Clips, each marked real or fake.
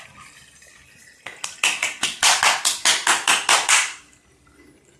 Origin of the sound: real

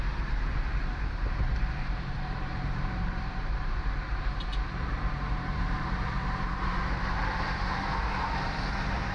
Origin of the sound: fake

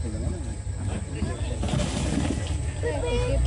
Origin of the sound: real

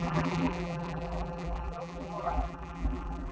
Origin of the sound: fake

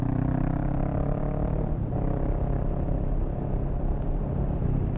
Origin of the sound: real